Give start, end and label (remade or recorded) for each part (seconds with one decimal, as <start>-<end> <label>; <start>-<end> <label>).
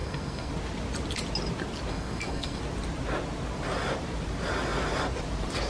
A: 0.0-0.5 remade; 0.5-1.9 recorded; 1.9-2.6 remade; 2.6-5.7 recorded